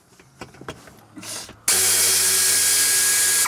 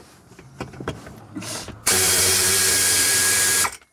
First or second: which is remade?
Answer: second